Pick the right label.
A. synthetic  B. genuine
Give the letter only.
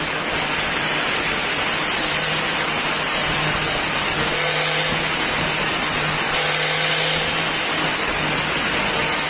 B